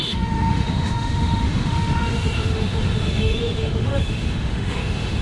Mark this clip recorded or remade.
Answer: remade